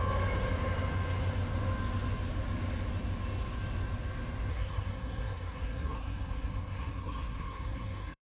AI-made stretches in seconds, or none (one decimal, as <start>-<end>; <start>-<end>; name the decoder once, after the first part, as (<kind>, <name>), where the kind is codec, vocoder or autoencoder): 4.5-8.3 (codec, SNAC)